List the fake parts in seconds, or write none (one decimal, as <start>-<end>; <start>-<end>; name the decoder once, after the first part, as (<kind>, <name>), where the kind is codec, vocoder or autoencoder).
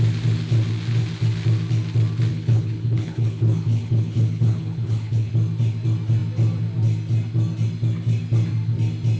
2.3-5.3 (codec, HILCodec)